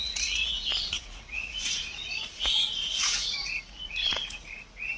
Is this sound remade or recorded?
remade